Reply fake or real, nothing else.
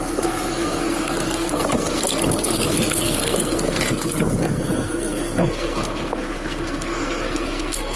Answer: fake